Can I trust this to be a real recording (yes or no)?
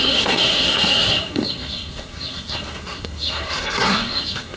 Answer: no